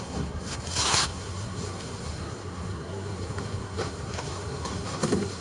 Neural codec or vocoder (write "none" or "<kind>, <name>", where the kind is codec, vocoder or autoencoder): codec, SNAC